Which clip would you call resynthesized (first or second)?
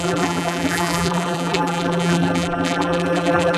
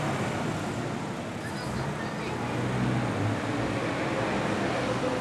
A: first